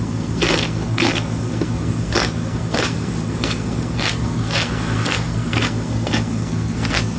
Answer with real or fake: fake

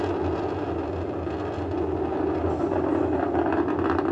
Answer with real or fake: real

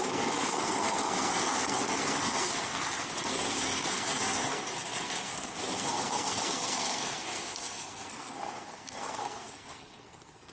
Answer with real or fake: fake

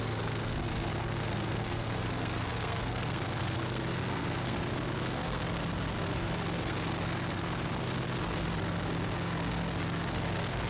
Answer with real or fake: fake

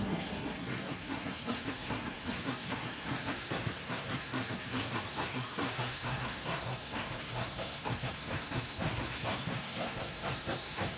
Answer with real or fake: fake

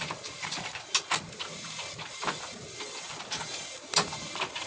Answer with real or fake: real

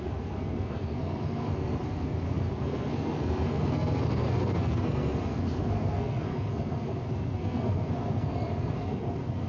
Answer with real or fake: fake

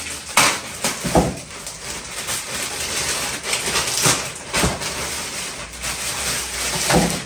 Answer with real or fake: real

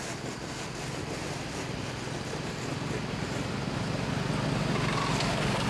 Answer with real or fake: real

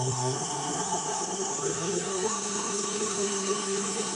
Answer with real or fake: fake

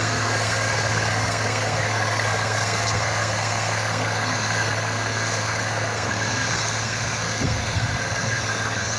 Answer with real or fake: fake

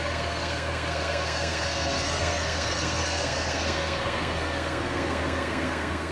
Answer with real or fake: fake